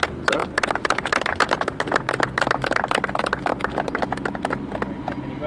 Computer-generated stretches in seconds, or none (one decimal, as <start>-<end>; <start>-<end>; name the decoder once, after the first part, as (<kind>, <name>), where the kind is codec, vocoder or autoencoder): none